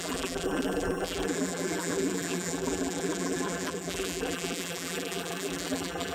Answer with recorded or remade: remade